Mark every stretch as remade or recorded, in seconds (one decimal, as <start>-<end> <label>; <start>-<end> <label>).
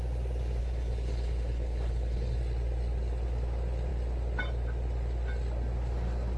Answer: 0.0-0.6 recorded; 0.6-2.4 remade; 2.4-6.4 recorded